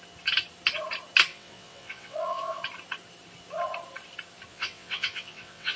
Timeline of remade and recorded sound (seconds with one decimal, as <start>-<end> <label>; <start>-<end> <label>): 0.0-1.3 recorded; 1.3-2.6 remade; 2.6-4.5 recorded; 4.5-5.8 remade